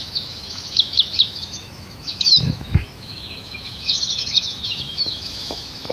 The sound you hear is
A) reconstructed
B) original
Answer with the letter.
A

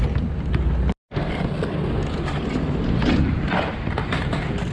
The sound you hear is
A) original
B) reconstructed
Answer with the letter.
A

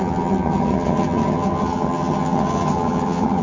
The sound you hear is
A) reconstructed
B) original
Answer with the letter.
A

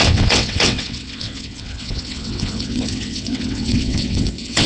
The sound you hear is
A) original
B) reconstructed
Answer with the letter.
B